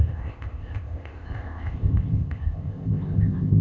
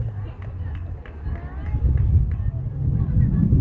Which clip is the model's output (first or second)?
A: first